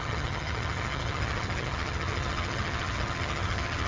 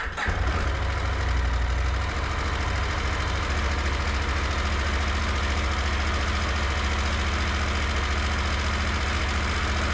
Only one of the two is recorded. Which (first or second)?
second